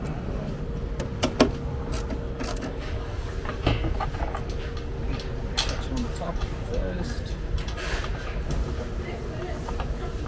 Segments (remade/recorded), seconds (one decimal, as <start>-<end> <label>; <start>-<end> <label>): 0.0-2.5 recorded; 2.5-3.3 remade; 3.3-10.3 recorded